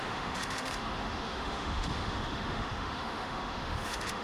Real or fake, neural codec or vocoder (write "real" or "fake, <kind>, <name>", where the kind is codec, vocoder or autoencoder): fake, autoencoder, DAC-VAE